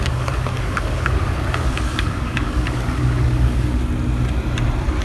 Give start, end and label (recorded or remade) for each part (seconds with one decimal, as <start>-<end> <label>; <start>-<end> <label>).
0.0-3.8 remade; 3.8-5.0 recorded

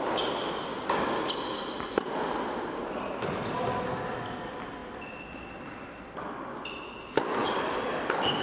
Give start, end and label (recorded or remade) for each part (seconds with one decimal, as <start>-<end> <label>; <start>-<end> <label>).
0.0-0.7 recorded; 0.7-1.2 remade; 1.2-8.4 recorded

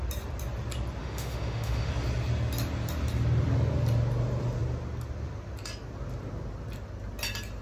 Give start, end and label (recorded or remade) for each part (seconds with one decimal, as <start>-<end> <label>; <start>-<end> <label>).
0.0-1.0 recorded; 1.0-1.9 remade; 1.9-7.6 recorded

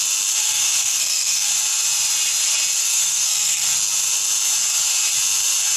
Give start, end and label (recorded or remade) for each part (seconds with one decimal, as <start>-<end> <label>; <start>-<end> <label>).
0.0-0.4 recorded; 0.4-1.5 remade; 1.5-2.8 recorded; 2.8-3.7 remade; 3.7-5.8 recorded